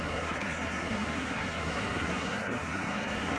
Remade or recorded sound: remade